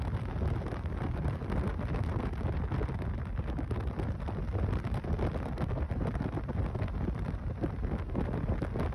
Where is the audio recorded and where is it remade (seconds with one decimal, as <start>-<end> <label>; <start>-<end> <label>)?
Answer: 0.0-8.9 recorded